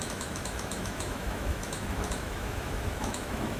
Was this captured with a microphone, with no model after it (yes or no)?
no